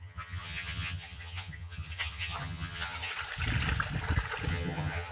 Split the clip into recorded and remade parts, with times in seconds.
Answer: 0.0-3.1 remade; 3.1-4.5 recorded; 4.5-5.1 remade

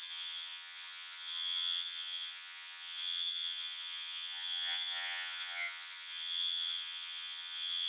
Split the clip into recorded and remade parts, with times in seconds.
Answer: 0.0-7.9 remade

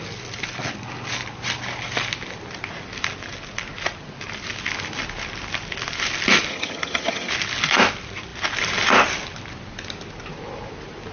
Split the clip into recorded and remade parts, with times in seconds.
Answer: 0.0-6.5 recorded; 6.5-7.3 remade; 7.3-11.1 recorded

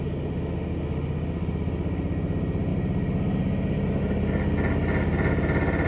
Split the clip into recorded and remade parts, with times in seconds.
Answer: 0.0-5.9 recorded

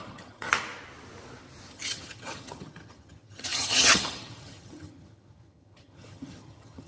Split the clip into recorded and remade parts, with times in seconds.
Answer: 0.0-0.5 remade; 0.5-1.7 recorded; 1.7-6.9 remade

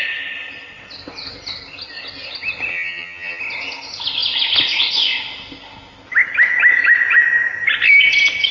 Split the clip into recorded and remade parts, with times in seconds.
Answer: 0.0-2.7 recorded; 2.7-3.4 remade; 3.4-8.5 recorded